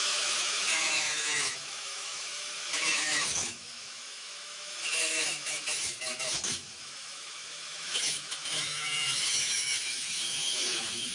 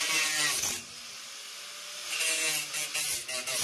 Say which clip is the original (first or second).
second